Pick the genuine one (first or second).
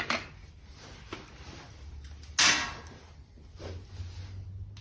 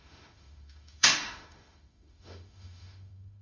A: first